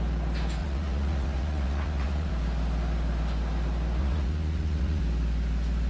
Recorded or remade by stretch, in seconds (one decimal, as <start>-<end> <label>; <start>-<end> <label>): 0.0-0.6 recorded; 0.6-2.3 remade; 2.3-4.0 recorded; 4.0-5.0 remade; 5.0-5.9 recorded